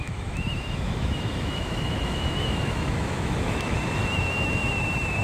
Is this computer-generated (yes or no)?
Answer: yes